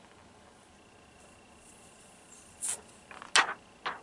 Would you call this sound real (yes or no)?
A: yes